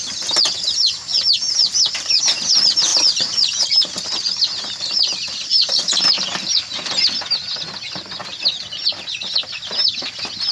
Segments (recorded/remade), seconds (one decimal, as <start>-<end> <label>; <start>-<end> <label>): 0.0-2.9 recorded; 2.9-6.0 remade; 6.0-10.5 recorded